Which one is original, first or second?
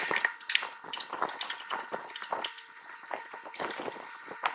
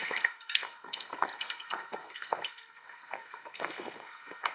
first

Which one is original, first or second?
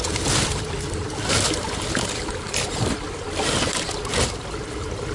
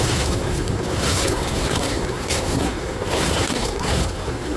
first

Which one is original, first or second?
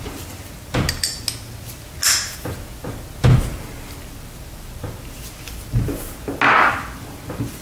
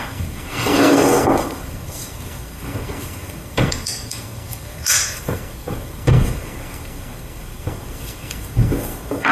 first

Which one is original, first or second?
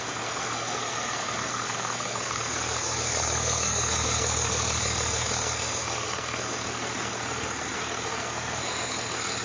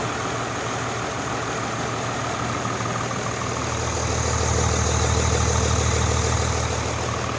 second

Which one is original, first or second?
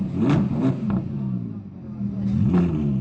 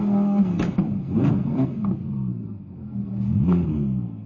first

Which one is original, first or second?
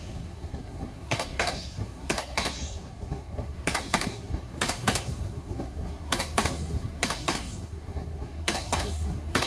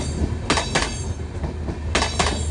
second